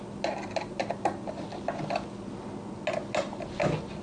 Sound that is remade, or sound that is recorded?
recorded